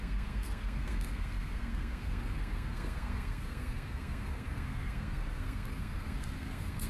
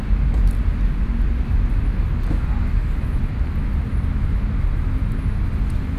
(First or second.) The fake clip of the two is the first